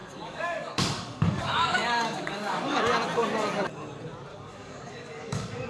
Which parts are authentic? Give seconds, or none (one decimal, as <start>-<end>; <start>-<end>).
2.8-4.3